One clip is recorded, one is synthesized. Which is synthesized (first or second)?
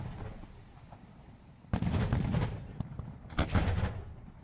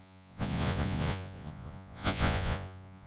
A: second